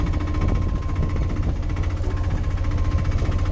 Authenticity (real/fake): real